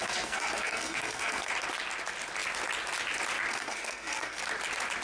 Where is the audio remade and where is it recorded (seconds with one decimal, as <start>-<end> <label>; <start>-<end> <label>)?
0.0-1.5 remade; 1.5-3.5 recorded; 3.5-4.4 remade; 4.4-5.0 recorded